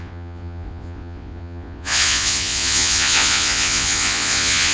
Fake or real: fake